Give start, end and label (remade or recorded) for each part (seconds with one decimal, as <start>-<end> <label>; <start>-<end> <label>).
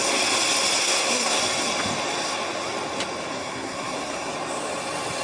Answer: 0.0-0.8 recorded; 0.8-1.4 remade; 1.4-3.3 recorded; 3.3-4.3 remade; 4.3-5.2 recorded